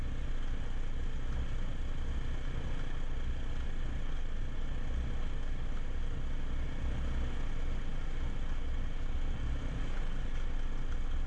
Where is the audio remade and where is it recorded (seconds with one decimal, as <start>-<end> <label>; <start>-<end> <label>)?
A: 0.0-11.3 recorded